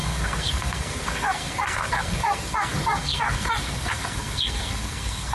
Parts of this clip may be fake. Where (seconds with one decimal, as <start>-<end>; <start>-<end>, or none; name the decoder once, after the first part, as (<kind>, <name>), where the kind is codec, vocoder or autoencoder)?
0.0-5.3 (codec, SNAC)